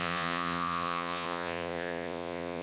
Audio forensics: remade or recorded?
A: remade